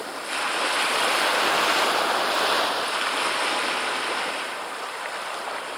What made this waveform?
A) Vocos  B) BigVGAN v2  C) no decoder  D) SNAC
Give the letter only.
C